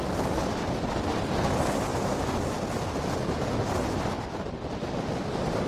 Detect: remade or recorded recorded